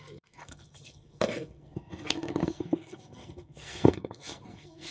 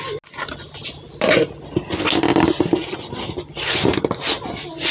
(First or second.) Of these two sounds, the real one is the second